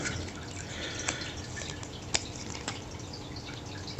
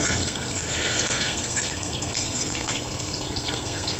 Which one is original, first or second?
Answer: first